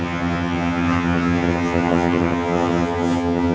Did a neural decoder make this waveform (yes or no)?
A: yes